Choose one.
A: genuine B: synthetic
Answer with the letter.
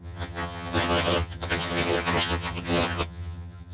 B